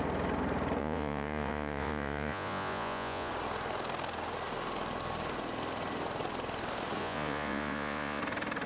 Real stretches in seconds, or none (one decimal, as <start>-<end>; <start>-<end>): 0.0-0.8; 3.3-7.0; 8.2-8.7